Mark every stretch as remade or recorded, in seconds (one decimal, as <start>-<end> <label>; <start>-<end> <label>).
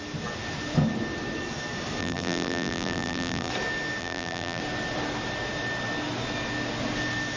0.0-2.0 recorded; 2.0-3.5 remade; 3.5-4.0 recorded; 4.0-4.6 remade; 4.6-7.4 recorded